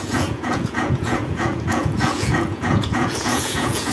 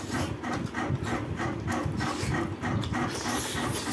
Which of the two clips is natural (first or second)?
second